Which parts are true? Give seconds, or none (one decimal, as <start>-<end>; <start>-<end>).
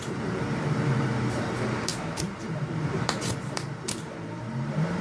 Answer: none